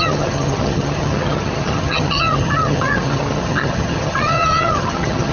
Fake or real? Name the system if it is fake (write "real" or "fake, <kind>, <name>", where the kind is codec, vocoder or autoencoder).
fake, vocoder, HiFi-GAN